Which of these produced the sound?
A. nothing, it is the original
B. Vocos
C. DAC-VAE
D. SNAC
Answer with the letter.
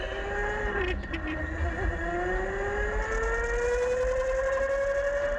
A